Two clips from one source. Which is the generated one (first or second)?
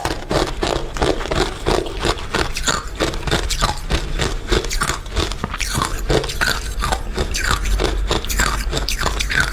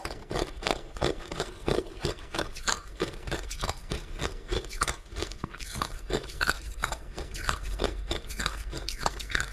second